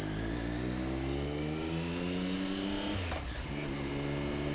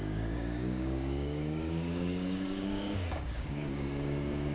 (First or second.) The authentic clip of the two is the first